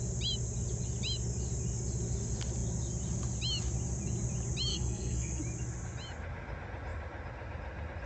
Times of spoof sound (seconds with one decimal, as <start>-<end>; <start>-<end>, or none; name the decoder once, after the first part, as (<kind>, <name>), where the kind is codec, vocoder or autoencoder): 4.7-5.4 (codec, SNAC)